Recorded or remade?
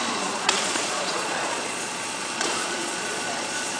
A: remade